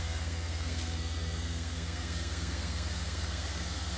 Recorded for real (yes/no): no